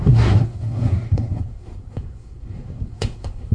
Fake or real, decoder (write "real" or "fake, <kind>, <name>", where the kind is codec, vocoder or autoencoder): fake, codec, SNAC